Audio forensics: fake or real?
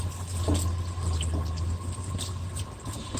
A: real